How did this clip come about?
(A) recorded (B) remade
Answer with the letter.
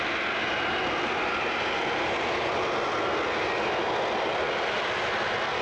A